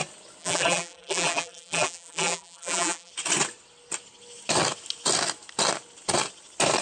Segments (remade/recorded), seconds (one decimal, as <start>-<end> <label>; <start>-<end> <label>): 0.0-0.4 recorded; 0.4-3.1 remade; 3.1-6.8 recorded